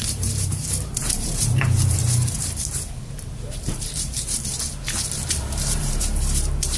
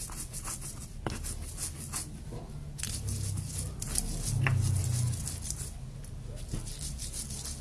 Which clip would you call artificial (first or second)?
first